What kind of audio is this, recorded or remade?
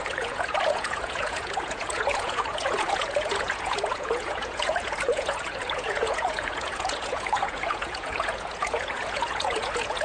remade